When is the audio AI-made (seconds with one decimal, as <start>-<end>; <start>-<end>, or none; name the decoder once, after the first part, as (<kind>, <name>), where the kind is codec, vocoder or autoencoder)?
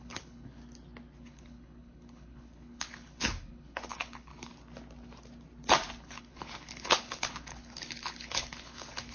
0.0-0.6 (codec, HILCodec); 1.2-4.3; 6.0-9.1